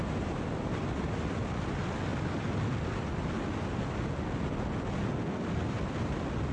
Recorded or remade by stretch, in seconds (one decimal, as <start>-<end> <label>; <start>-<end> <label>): 0.0-6.5 recorded